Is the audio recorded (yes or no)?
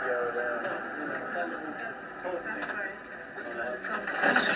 yes